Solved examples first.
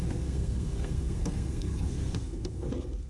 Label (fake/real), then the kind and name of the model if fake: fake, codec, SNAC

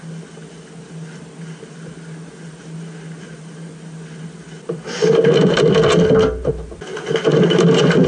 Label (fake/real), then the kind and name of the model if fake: real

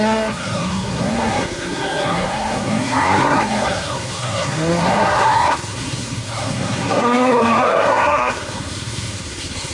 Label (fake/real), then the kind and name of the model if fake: fake, codec, SNAC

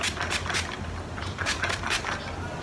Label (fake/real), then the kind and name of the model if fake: real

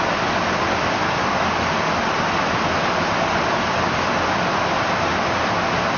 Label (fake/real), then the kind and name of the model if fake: real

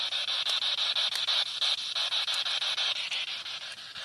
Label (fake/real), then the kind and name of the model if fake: real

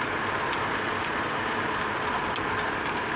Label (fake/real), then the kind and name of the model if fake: real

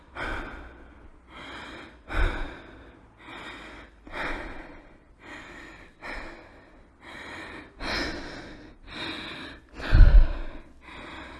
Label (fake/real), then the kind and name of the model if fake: real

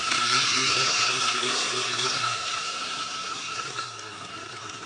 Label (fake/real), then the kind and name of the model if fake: fake, codec, SNAC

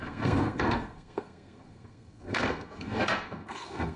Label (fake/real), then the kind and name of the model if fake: fake, codec, SNAC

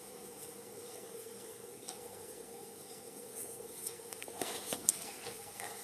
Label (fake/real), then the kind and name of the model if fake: fake, codec, SNAC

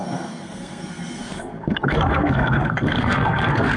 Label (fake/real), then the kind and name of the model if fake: fake, codec, SNAC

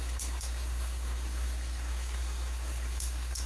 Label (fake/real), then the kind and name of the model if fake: fake, codec, SNAC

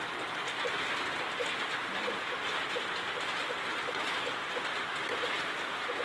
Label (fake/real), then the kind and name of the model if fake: real